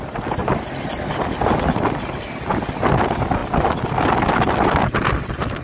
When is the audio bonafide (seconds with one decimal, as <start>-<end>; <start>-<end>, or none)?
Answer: 0.0-5.6